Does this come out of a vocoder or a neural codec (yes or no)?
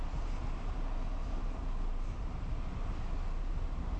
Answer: no